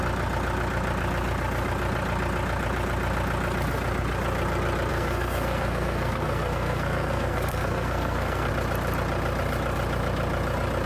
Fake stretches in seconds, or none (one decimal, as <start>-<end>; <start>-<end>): 4.9-8.5